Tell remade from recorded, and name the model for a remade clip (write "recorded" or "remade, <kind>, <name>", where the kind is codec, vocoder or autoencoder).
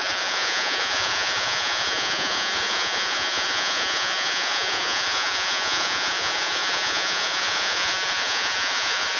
remade, vocoder, Vocos